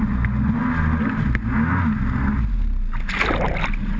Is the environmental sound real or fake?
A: real